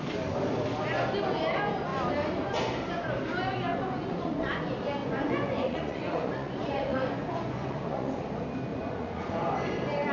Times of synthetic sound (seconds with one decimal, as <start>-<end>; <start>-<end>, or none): 3.7-4.6; 5.0-8.2; 8.7-9.5